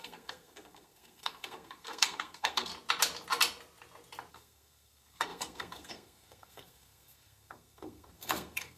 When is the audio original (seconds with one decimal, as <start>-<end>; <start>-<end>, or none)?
2.7-4.3